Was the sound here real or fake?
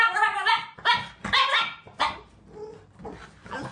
real